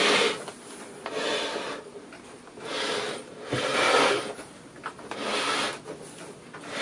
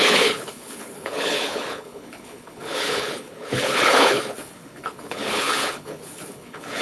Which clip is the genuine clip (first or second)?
first